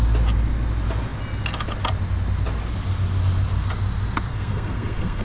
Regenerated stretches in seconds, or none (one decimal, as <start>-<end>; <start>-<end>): 4.3-5.2